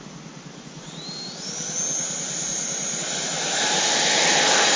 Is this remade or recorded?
recorded